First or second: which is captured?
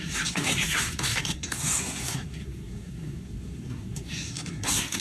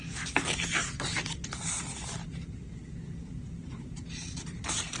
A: second